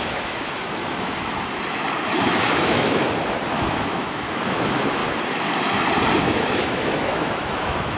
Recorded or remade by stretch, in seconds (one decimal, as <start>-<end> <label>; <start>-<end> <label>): 0.0-1.3 remade; 1.3-2.2 recorded; 2.2-3.0 remade; 3.0-3.5 recorded; 3.5-5.0 remade; 5.0-6.2 recorded; 6.2-8.0 remade